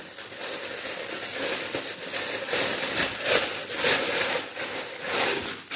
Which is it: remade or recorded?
recorded